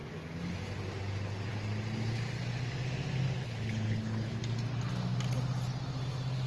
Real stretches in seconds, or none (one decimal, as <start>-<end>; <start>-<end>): 0.0-3.4; 4.4-6.5